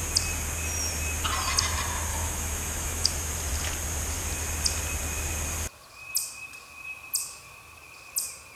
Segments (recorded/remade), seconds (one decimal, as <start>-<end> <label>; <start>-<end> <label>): 0.0-2.1 recorded; 2.1-3.1 remade; 3.1-8.6 recorded